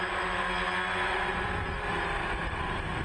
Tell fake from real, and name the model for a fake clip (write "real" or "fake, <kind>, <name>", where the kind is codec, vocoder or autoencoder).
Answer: real